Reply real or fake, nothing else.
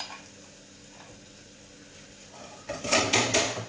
real